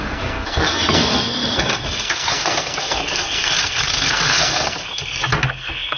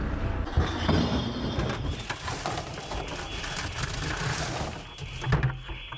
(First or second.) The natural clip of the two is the second